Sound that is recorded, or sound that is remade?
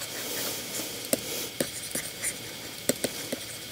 recorded